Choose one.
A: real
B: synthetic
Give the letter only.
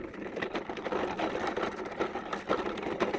A